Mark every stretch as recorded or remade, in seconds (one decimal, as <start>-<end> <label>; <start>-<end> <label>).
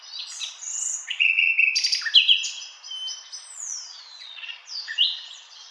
0.0-1.5 remade; 1.5-3.5 recorded; 3.5-5.7 remade